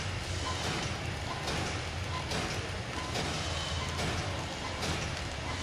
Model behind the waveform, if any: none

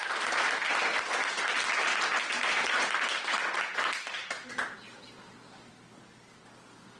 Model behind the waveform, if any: none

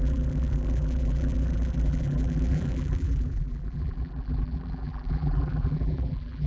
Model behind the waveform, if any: vocoder, BigVGAN v2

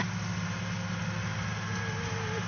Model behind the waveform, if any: none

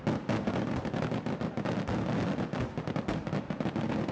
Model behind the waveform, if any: none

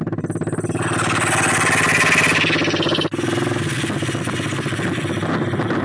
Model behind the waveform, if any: none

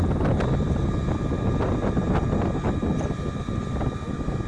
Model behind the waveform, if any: none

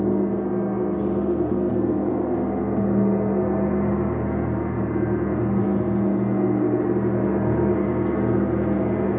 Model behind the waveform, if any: none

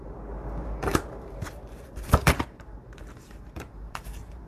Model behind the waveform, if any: vocoder, BigVGAN v2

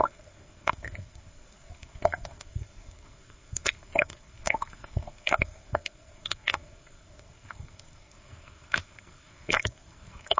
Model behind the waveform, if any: codec, SNAC